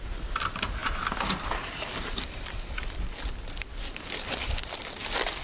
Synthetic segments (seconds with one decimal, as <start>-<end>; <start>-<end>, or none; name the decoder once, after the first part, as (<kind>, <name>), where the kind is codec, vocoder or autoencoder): none